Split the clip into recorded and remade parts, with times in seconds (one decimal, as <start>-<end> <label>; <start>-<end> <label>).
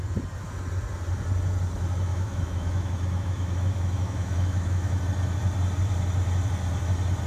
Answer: 0.0-2.1 recorded; 2.1-5.0 remade; 5.0-7.3 recorded